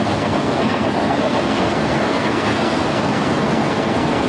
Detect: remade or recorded remade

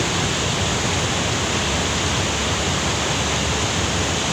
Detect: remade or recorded recorded